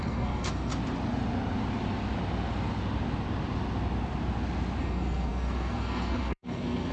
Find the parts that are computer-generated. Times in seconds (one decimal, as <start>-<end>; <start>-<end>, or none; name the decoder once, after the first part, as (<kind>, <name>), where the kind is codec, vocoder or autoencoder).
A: 0.0-0.7 (codec, SNAC); 4.8-6.9